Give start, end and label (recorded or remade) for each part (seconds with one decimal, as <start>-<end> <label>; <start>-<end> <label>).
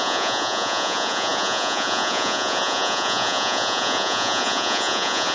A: 0.0-5.3 remade